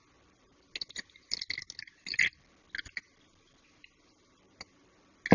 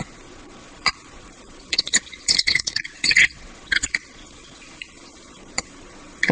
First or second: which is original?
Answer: first